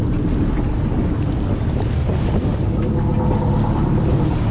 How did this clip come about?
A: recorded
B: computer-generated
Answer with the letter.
A